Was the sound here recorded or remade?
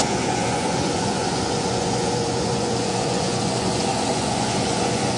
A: remade